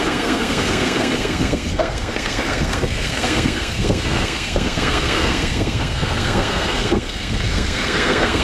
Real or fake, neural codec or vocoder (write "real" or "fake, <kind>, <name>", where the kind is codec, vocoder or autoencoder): fake, codec, SNAC